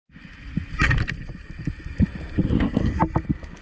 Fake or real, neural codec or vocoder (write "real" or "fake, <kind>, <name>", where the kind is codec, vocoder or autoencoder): real